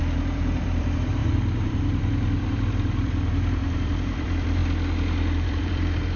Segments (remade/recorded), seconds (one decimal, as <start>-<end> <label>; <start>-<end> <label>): 0.0-4.6 remade; 4.6-5.3 recorded; 5.3-6.2 remade